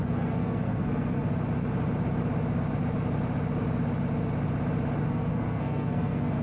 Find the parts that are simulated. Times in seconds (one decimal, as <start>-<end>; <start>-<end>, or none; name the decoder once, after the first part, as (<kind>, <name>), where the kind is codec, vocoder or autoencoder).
0.0-1.2 (codec, SNAC); 5.0-6.4